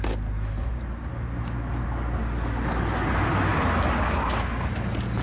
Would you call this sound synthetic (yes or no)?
no